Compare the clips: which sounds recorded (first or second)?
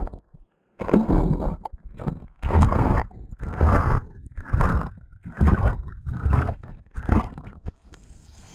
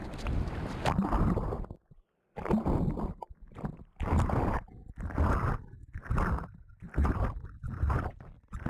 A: second